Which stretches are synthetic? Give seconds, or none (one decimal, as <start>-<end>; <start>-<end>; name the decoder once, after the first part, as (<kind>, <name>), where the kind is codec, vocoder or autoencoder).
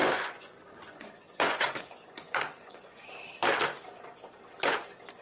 0.0-3.1 (vocoder, Vocos)